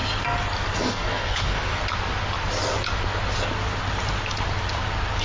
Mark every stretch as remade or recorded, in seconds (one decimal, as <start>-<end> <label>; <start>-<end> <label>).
0.0-0.9 recorded; 0.9-1.8 remade; 1.8-5.2 recorded